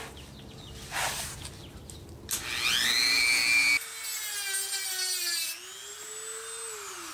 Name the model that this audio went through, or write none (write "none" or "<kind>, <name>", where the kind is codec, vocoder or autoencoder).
none